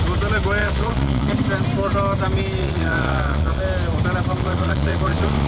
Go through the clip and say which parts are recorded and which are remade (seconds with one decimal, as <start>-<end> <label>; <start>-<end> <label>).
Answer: 0.0-0.6 recorded; 0.6-1.3 remade; 1.3-2.6 recorded; 2.6-3.6 remade; 3.6-4.4 recorded; 4.4-5.5 remade